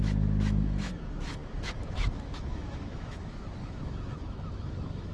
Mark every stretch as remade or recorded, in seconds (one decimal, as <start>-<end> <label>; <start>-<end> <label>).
0.0-5.1 remade